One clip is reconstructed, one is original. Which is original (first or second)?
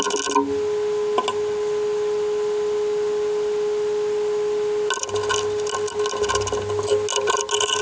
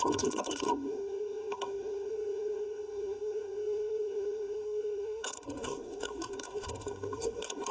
first